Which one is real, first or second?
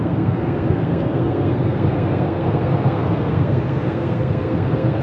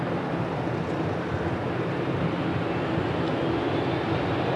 second